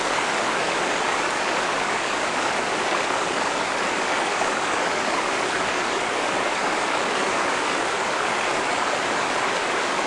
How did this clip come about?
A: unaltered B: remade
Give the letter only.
B